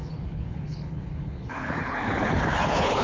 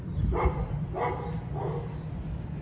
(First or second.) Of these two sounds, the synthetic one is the first